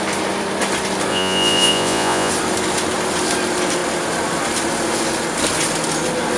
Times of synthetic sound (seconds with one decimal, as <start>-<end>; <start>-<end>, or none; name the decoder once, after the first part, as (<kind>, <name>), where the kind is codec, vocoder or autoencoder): 1.1-2.3 (vocoder, Vocos)